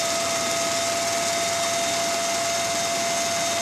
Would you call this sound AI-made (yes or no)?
no